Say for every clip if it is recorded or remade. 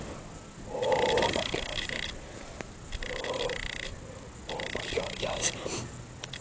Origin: recorded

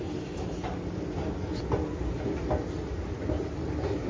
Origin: recorded